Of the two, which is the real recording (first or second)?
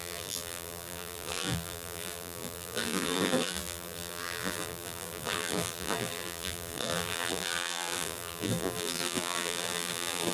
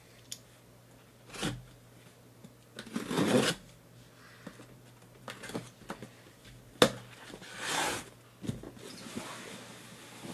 second